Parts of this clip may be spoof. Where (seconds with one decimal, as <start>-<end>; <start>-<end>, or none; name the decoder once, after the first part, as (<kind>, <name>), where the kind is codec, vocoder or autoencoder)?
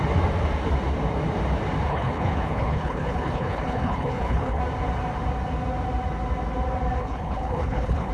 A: 1.9-4.6 (codec, HILCodec); 7.0-8.1